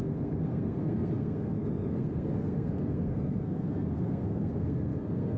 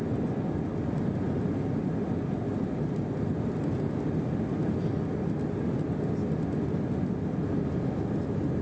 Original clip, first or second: second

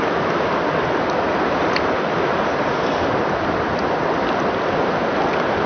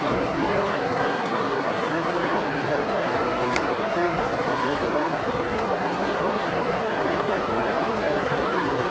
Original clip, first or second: first